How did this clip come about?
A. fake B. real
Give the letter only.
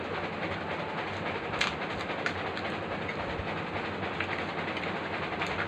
B